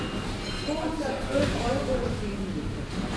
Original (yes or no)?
yes